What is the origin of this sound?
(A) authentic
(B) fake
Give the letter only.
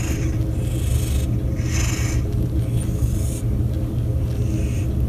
A